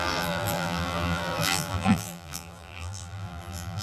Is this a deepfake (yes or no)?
yes